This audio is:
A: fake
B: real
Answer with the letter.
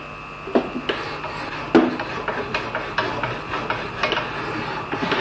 B